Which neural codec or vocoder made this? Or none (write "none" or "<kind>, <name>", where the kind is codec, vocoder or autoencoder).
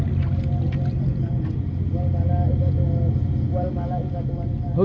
none